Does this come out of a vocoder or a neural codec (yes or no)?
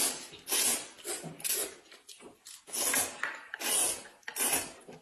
no